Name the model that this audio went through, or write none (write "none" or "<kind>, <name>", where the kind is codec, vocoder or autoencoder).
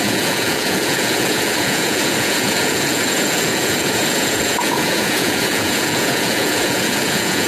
vocoder, Vocos